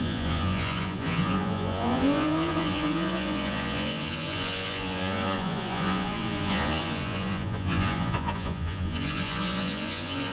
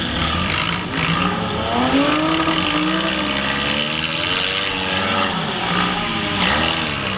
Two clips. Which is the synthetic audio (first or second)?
first